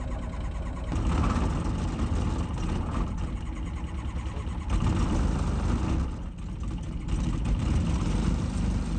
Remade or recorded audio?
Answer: recorded